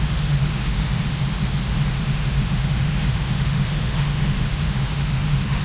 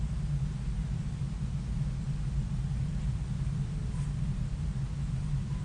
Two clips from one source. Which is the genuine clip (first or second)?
second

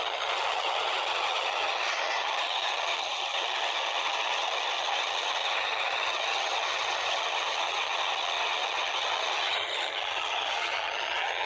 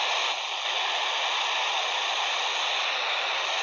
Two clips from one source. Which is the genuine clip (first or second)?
second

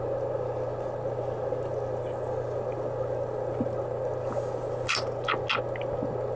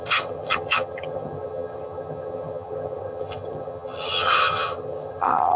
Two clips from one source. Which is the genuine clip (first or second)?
first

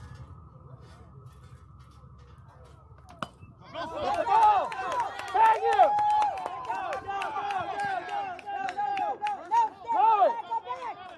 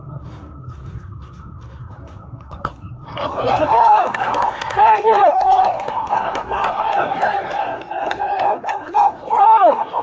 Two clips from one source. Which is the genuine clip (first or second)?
first